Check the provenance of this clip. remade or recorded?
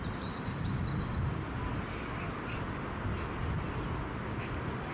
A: recorded